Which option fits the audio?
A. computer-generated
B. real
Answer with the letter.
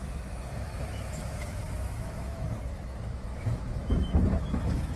A